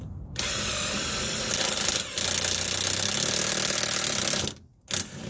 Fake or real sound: real